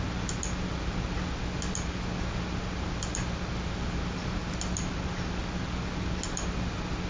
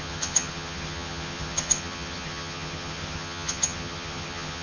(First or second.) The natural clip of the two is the first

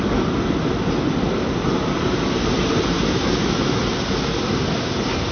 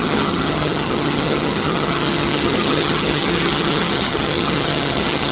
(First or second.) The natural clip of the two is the first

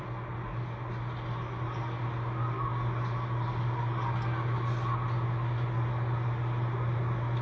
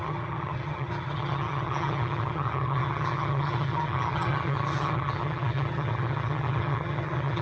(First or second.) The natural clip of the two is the first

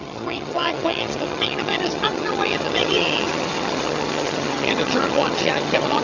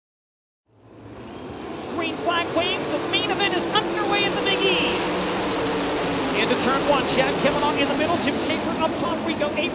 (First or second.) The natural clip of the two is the second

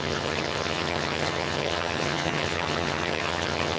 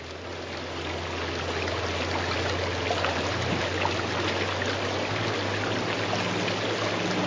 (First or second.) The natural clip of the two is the second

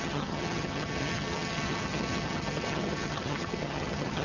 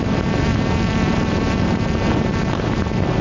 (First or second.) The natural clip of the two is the second